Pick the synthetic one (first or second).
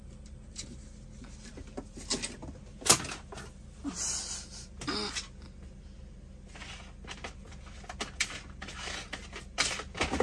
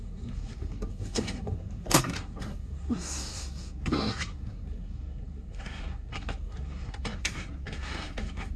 second